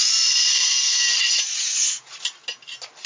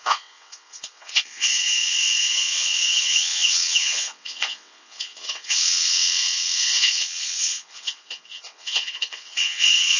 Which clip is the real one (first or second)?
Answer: first